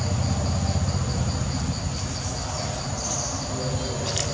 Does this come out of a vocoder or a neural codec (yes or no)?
no